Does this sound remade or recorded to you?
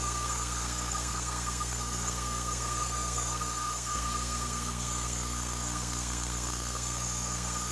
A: remade